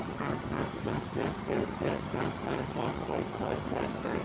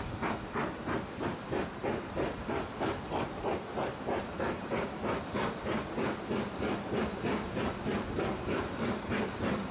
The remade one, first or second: first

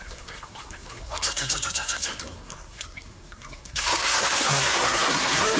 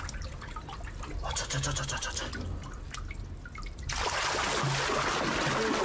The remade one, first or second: first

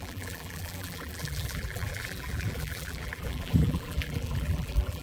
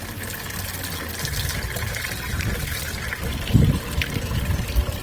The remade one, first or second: first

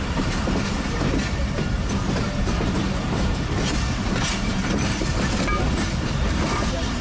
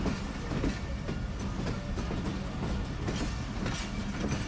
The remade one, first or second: first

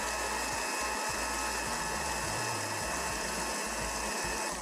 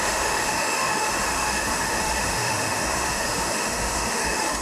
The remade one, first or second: second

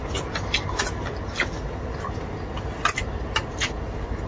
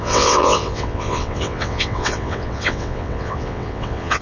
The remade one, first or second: second